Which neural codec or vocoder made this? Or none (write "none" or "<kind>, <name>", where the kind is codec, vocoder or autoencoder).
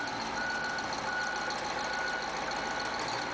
none